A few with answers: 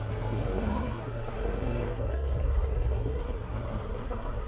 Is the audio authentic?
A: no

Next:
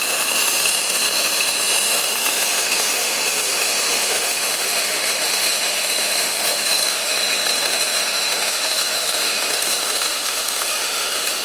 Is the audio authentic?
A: no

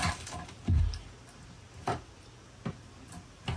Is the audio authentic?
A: yes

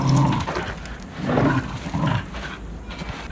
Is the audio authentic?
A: yes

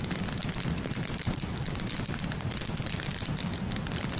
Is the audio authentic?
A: no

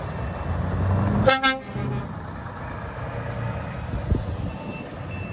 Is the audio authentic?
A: yes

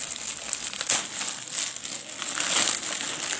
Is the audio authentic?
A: yes